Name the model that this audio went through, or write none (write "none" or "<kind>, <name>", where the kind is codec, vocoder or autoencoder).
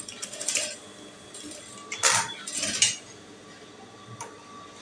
none